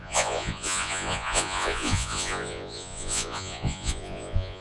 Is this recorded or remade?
remade